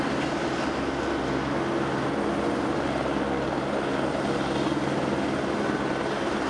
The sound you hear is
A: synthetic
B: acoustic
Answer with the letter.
B